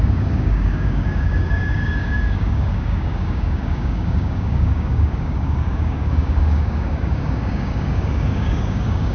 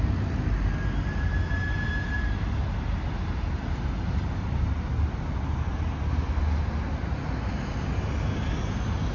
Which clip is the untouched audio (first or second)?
second